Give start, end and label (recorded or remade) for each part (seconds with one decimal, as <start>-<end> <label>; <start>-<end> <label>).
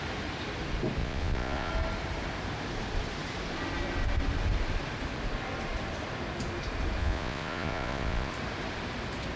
0.0-1.0 recorded; 1.0-1.7 remade; 1.7-7.0 recorded; 7.0-8.3 remade; 8.3-9.4 recorded